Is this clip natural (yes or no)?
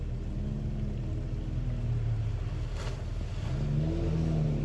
yes